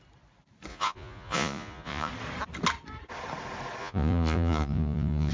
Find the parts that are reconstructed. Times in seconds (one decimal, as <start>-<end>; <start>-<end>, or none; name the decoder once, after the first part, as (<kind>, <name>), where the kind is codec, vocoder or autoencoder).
0.7-2.1 (vocoder, Vocos); 3.8-5.3